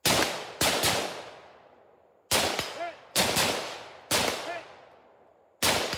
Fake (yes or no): no